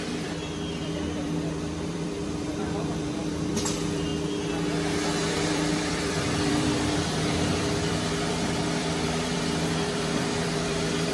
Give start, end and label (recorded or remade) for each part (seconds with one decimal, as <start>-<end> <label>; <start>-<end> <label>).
0.0-4.1 remade; 4.1-5.3 recorded; 5.3-11.1 remade